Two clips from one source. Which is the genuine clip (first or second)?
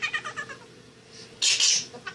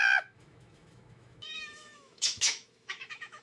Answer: first